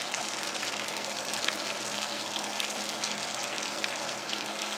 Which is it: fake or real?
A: fake